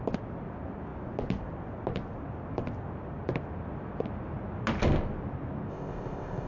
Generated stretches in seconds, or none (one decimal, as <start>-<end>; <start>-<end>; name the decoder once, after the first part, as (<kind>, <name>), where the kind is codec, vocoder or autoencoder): 5.7-6.5 (codec, ZipCodec)